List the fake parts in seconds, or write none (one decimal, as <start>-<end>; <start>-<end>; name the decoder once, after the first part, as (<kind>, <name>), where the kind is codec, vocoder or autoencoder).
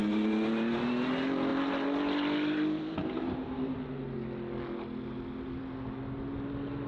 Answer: none